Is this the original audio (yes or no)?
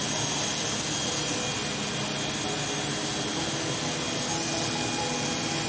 yes